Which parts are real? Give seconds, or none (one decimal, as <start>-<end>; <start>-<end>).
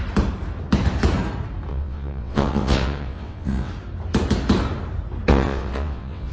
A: 0.0-1.7; 3.7-5.3